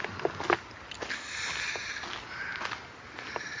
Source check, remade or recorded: recorded